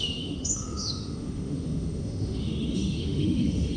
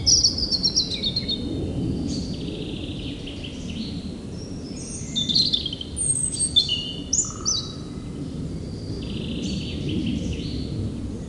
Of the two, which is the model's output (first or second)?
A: first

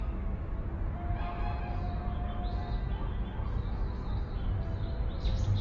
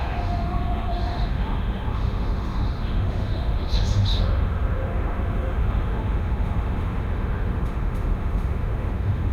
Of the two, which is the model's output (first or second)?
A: second